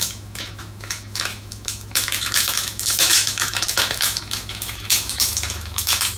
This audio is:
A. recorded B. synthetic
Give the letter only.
B